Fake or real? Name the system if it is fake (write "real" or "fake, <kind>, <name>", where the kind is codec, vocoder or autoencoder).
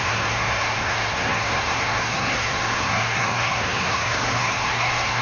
fake, codec, SNAC